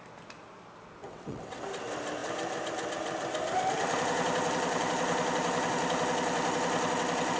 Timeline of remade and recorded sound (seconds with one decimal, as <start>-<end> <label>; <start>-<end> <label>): 0.0-1.0 recorded; 1.0-1.6 remade; 1.6-7.4 recorded